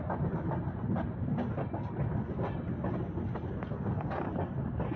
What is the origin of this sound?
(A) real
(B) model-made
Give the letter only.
A